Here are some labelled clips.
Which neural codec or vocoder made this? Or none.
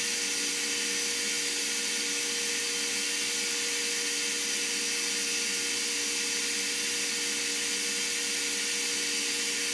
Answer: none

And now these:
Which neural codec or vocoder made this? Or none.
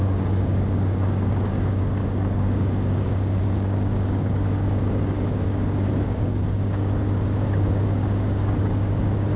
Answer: codec, DAC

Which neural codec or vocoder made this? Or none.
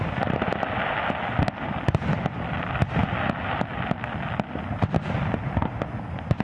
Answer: none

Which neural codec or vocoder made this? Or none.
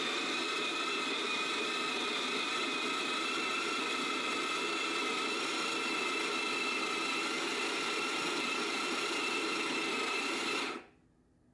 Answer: none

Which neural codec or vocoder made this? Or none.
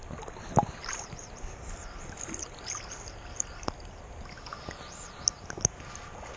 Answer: none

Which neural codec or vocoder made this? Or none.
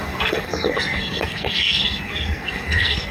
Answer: codec, SNAC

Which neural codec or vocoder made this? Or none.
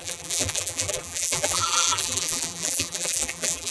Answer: vocoder, BigVGAN v2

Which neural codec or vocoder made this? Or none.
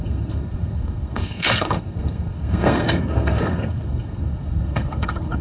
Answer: codec, SNAC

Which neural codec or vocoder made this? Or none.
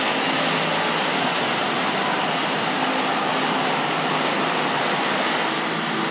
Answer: none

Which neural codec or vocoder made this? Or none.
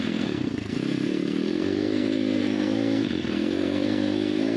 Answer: codec, SNAC